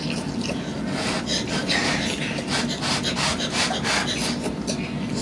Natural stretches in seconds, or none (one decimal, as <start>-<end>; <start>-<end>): 0.0-5.2